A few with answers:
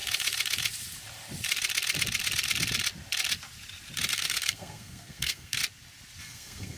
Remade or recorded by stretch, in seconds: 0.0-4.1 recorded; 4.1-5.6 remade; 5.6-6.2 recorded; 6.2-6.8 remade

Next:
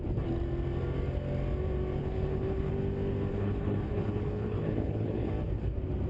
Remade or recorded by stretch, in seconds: 0.0-2.0 recorded; 2.0-2.7 remade; 2.7-3.3 recorded; 3.3-5.3 remade; 5.3-6.1 recorded

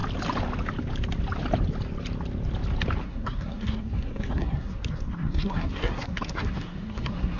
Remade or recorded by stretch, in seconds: 0.0-3.0 recorded; 3.0-7.4 remade

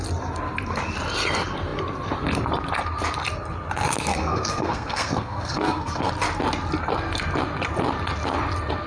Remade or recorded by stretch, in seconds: 0.0-4.1 recorded; 4.1-6.1 remade; 6.1-8.9 recorded

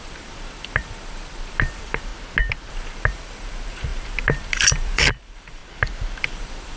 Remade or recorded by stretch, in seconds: 0.0-2.1 remade; 2.1-2.7 recorded; 2.7-5.6 remade; 5.6-6.2 recorded; 6.2-6.8 remade

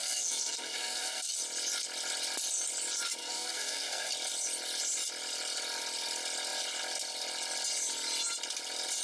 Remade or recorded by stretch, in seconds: 0.0-1.3 remade; 1.3-3.2 recorded; 3.2-4.1 remade; 4.1-9.0 recorded

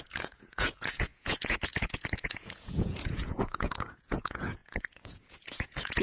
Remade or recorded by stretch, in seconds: 0.0-6.0 remade